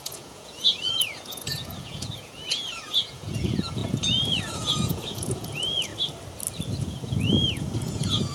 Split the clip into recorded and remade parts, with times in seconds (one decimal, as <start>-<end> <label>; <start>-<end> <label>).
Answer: 0.0-5.9 remade; 5.9-6.8 recorded; 6.8-8.3 remade